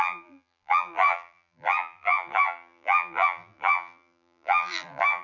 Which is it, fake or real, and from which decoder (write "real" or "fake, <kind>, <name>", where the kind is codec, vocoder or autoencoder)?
fake, vocoder, BigVGAN v2